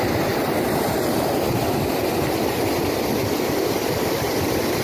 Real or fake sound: real